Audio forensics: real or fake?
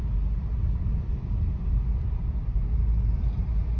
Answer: real